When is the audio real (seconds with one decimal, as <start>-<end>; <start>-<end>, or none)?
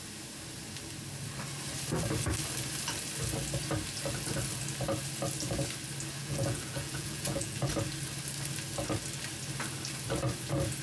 0.0-6.2; 7.7-10.8